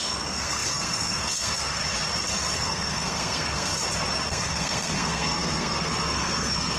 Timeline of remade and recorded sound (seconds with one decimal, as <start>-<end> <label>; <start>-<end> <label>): 0.0-1.8 remade; 1.8-2.6 recorded; 2.6-3.7 remade; 3.7-4.3 recorded; 4.3-6.8 remade